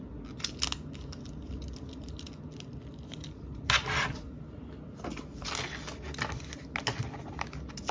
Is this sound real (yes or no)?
yes